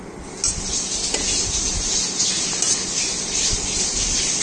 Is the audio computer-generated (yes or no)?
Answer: no